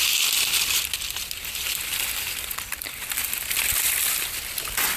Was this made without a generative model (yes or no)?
yes